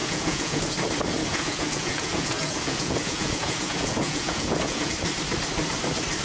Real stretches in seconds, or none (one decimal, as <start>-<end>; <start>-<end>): 0.6-1.2; 4.9-6.2